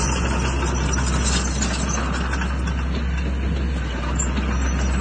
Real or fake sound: real